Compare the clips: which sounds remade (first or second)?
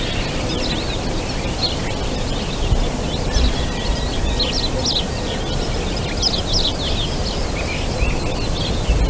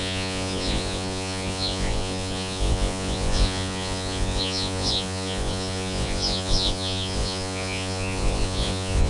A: second